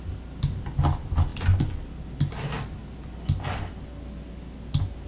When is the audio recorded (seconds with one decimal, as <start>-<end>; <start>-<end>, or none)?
0.0-5.1